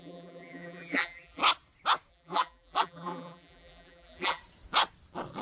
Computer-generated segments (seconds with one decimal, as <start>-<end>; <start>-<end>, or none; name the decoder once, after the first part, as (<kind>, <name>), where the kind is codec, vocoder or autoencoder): 0.0-1.4 (vocoder, BigVGAN v2); 2.1-4.4